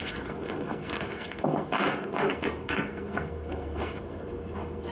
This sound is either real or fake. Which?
fake